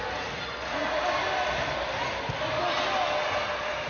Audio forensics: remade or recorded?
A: recorded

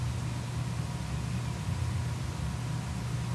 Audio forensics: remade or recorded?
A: recorded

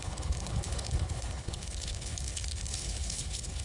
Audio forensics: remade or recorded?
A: remade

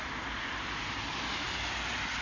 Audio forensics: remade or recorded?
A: recorded